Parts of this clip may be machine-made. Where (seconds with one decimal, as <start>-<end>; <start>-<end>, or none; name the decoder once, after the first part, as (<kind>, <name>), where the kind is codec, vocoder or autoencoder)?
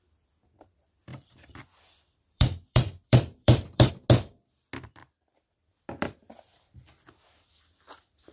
1.1-3.9 (vocoder, BigVGAN v2); 5.0-6.6